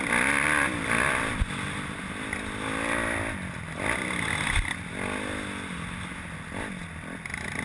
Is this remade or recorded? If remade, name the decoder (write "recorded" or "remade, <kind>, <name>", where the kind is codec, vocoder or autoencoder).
recorded